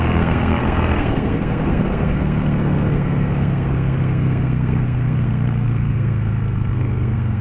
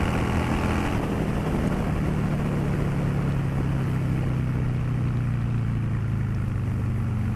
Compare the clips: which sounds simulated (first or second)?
first